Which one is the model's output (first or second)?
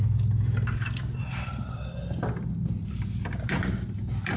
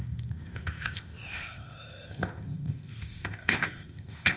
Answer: second